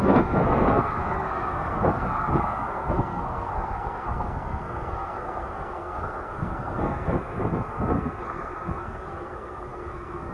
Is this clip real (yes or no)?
no